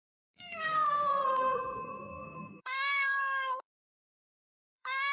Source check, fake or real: fake